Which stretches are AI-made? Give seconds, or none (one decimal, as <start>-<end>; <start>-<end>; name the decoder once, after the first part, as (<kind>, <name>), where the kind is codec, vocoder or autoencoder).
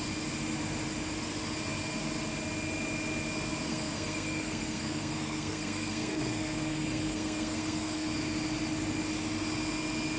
3.7-8.1 (codec, SNAC)